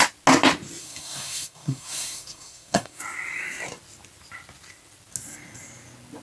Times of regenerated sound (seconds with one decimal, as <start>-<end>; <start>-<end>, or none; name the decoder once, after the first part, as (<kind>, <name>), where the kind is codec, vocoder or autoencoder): 0.8-3.0 (codec, SNAC)